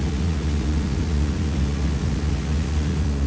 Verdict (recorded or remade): remade